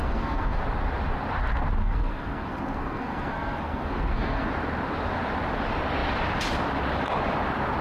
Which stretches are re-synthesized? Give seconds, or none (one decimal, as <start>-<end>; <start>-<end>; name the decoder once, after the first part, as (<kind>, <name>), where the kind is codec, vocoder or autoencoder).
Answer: 0.0-0.6 (codec, SNAC); 1.8-4.5